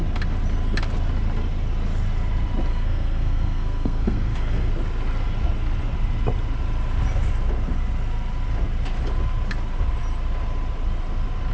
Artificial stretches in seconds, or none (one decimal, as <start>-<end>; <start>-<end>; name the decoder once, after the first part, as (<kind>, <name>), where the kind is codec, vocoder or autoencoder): 2.7-4.7 (codec, SNAC)